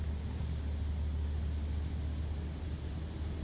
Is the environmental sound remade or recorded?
recorded